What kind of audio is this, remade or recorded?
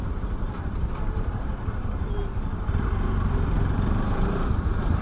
remade